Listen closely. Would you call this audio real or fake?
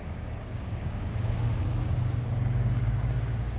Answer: fake